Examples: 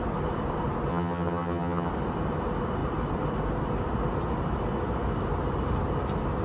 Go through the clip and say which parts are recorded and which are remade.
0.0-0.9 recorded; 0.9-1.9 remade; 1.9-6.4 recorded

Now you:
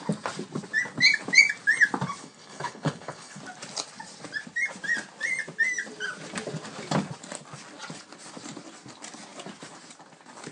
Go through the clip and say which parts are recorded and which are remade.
0.0-2.2 recorded; 2.2-3.4 remade; 3.4-10.5 recorded

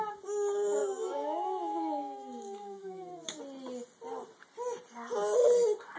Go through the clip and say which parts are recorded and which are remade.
0.0-0.8 recorded; 0.8-3.4 remade; 3.4-6.0 recorded

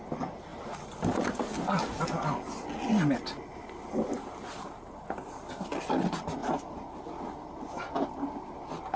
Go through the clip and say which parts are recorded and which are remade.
0.0-9.0 recorded

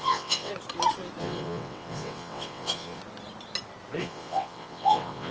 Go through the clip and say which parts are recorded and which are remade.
0.0-0.5 remade; 0.5-1.2 recorded; 1.2-3.0 remade; 3.0-4.0 recorded; 4.0-5.3 remade